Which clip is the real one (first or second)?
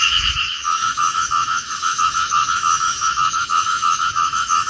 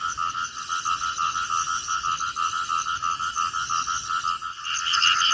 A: second